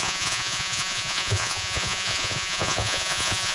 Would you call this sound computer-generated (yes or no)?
yes